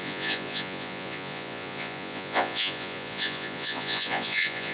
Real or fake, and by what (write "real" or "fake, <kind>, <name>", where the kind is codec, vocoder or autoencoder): fake, vocoder, Vocos